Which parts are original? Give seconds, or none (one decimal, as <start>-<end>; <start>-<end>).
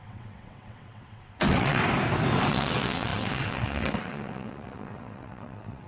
1.8-2.5